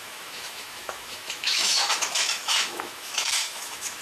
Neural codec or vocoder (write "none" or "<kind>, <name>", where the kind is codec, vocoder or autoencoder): autoencoder, DAC-VAE